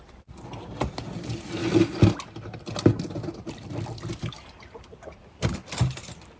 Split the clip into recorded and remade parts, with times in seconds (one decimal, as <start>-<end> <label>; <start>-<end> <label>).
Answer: 0.0-6.4 recorded